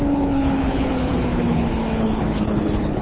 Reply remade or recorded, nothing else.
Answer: remade